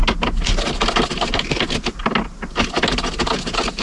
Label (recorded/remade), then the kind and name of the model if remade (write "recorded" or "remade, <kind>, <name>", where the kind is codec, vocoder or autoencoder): recorded